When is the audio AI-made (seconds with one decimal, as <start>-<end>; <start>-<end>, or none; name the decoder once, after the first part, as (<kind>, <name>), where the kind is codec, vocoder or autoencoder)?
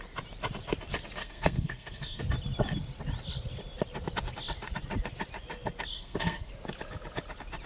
1.2-2.2 (codec, SNAC); 5.9-6.5